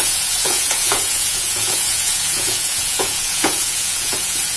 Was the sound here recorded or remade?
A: remade